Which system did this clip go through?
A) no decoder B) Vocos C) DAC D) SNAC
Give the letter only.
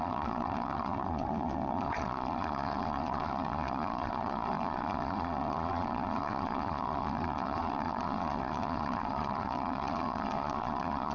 B